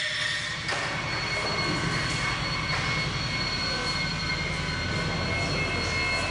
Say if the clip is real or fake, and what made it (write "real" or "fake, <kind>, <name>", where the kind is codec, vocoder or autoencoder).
real